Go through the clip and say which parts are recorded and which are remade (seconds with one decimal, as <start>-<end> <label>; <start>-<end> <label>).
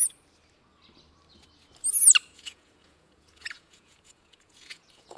0.0-2.3 recorded; 2.3-5.2 remade